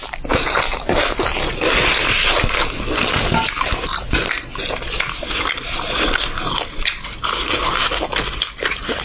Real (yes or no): yes